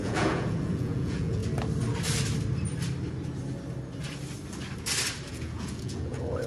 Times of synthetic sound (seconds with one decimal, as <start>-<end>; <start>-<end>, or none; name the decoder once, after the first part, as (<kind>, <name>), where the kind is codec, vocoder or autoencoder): 0.0-1.4 (vocoder, Vocos); 5.3-6.5